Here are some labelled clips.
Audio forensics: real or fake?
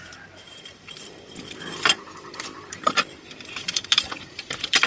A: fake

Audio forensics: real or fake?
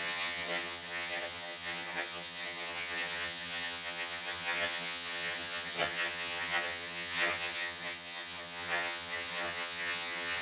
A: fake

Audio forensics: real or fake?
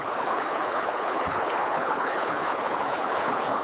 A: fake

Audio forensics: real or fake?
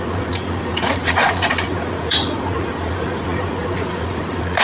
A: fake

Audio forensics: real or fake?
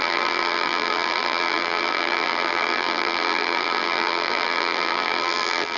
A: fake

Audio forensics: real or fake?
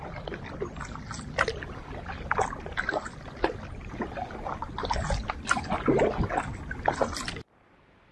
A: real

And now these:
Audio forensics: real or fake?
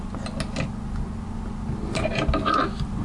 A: real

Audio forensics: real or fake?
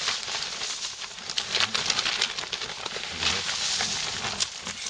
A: real